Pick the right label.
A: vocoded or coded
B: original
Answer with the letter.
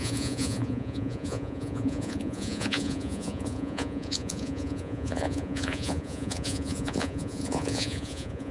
A